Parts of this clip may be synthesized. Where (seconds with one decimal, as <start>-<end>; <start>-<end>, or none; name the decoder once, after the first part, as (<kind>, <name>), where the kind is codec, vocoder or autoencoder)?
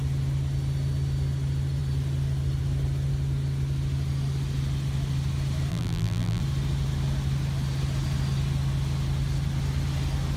5.7-6.4 (vocoder, BigVGAN v2)